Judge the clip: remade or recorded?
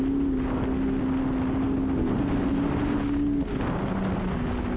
recorded